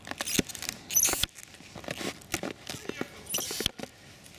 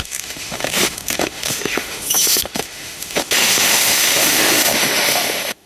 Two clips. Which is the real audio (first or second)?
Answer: first